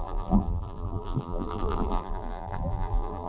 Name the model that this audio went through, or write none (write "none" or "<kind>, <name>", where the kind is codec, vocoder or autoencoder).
vocoder, BigVGAN v2